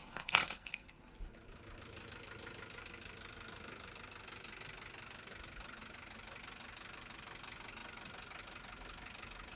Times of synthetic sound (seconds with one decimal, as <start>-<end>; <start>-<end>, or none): 0.0-1.0